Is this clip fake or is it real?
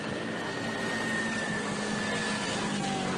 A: real